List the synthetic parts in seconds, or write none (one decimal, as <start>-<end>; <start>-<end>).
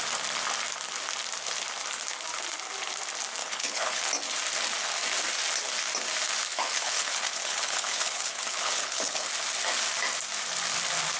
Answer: 3.4-4.0; 6.5-9.3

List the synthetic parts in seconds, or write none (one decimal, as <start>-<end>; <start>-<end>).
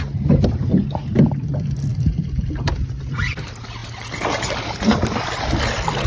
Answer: none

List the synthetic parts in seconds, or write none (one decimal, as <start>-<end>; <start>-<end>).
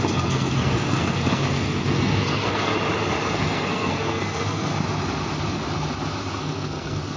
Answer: 0.0-2.7; 3.3-4.7; 6.3-7.2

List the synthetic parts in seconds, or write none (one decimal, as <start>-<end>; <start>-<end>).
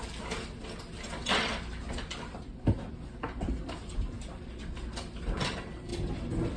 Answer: 0.0-6.6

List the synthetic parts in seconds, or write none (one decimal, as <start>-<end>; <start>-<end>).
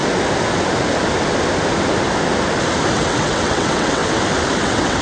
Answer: 2.9-4.0; 4.6-5.0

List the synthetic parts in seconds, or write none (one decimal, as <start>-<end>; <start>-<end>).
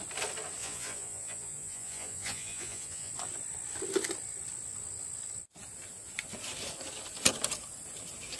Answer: 0.6-3.1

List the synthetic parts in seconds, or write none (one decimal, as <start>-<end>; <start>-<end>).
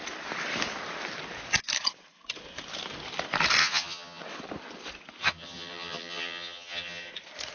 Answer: 3.6-4.2; 5.2-7.1